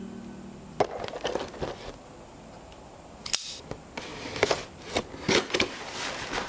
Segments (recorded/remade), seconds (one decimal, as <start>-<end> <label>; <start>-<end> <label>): 0.0-6.5 recorded